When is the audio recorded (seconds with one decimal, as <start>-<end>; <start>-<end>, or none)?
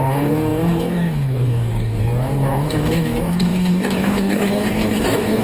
none